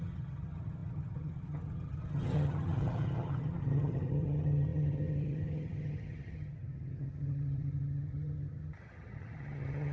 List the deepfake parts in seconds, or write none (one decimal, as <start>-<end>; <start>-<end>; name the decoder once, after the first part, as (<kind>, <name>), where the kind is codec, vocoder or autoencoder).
0.0-9.9 (vocoder, HiFi-GAN)